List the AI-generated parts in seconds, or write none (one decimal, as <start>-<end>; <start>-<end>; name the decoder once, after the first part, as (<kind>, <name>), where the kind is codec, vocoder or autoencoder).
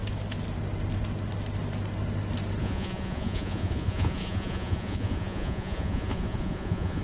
2.6-7.0 (vocoder, Vocos)